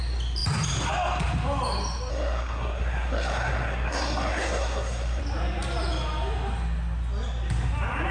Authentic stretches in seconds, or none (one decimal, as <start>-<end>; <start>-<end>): 0.0-2.1; 5.2-8.1